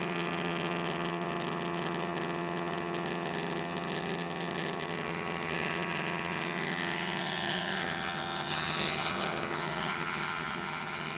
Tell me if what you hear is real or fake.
fake